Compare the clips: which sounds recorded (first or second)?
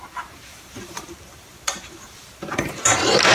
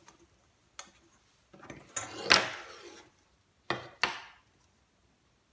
second